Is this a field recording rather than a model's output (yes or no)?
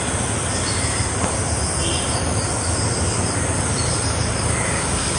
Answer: yes